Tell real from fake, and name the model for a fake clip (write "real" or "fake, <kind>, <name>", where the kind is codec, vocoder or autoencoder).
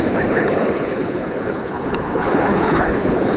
fake, codec, HILCodec